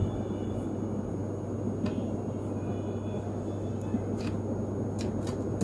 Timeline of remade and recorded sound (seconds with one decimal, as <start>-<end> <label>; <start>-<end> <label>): 0.0-5.6 recorded